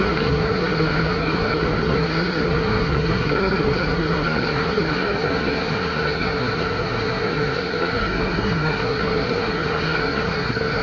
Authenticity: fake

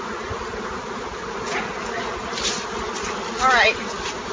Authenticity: real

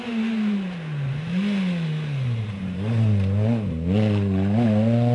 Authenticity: real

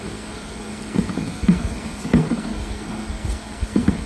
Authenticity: fake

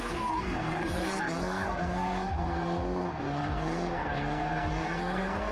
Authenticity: fake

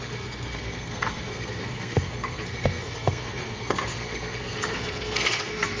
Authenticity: fake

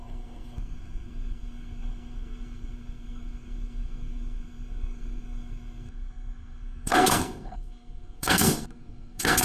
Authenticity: fake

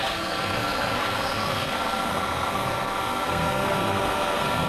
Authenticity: fake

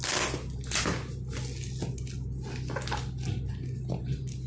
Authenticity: real